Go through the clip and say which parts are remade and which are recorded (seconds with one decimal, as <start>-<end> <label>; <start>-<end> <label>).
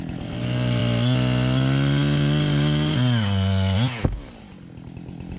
0.0-5.4 recorded